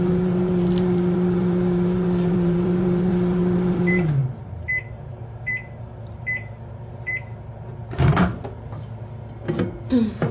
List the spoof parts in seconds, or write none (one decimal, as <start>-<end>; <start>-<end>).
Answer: 0.0-4.2; 4.9-8.3; 9.9-10.3